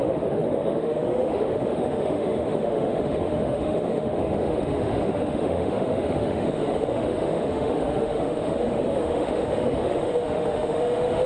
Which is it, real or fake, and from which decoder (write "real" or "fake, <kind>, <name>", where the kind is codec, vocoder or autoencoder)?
fake, autoencoder, DAC-VAE